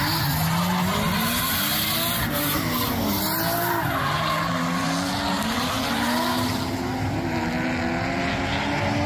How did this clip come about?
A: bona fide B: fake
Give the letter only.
A